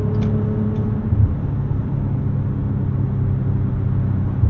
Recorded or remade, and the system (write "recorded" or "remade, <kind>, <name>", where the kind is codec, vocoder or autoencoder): recorded